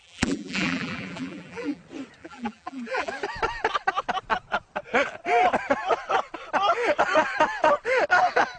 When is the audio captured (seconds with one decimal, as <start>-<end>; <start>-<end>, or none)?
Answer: 1.8-2.2; 3.1-8.6